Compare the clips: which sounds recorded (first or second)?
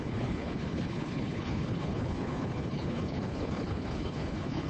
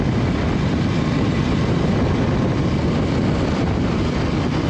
second